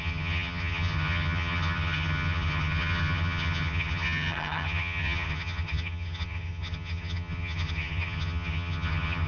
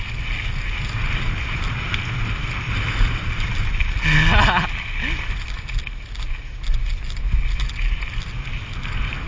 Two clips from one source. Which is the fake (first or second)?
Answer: first